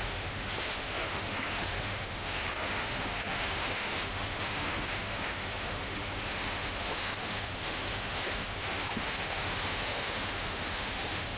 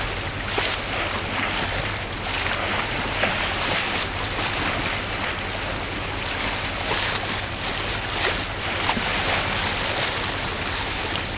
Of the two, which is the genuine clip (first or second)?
second